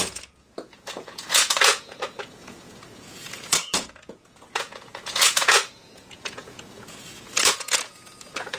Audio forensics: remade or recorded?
remade